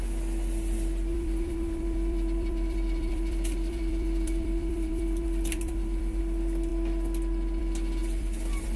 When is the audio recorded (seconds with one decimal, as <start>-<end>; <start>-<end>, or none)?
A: 0.0-1.1; 6.2-8.0